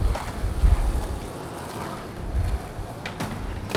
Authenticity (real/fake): real